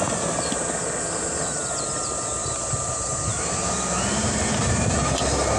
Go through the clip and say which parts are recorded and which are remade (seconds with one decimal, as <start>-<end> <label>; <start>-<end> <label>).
0.0-2.4 recorded; 2.4-4.9 remade; 4.9-5.6 recorded